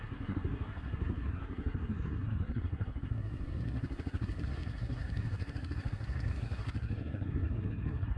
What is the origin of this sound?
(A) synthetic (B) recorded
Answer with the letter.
A